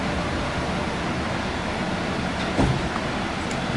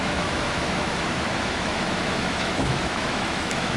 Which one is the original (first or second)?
first